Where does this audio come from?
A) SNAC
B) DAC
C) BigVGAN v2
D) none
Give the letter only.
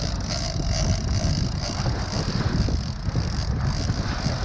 D